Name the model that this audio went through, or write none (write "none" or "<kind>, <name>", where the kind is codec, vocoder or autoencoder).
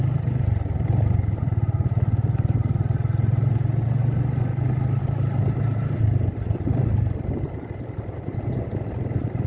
none